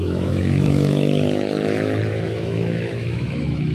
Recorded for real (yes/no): no